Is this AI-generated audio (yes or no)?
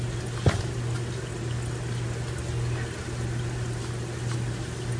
no